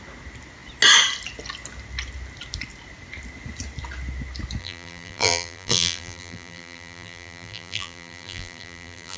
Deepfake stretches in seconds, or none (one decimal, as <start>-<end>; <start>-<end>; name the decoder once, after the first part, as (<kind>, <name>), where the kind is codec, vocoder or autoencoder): 4.6-9.2 (vocoder, BigVGAN v2)